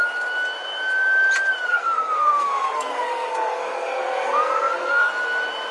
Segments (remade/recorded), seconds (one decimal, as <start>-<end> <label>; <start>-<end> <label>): 0.0-1.7 recorded; 1.7-5.1 remade; 5.1-5.7 recorded